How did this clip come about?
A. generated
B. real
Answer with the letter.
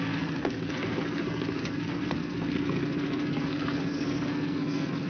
A